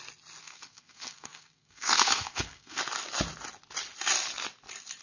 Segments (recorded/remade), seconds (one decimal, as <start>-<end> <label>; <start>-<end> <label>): 0.0-0.4 recorded; 0.4-2.8 remade; 2.8-5.0 recorded